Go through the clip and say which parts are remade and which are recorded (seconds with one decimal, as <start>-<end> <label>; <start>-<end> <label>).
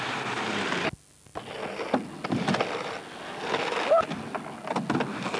0.0-5.4 recorded